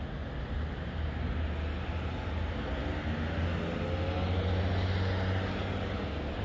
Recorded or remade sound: recorded